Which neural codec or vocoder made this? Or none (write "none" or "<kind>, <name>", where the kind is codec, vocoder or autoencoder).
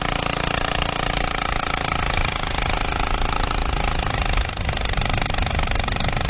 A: none